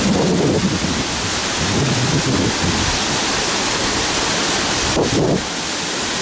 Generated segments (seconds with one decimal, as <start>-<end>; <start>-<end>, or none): none